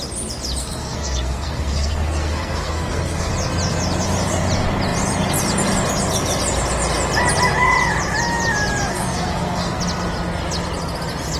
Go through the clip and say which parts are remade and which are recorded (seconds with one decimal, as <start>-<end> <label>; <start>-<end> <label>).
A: 0.0-0.6 recorded; 0.6-3.3 remade; 3.3-8.9 recorded; 8.9-9.8 remade; 9.8-11.4 recorded